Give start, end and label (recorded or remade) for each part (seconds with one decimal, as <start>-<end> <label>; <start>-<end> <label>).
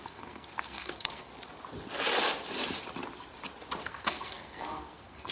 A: 0.0-1.3 remade; 1.3-3.8 recorded; 3.8-5.3 remade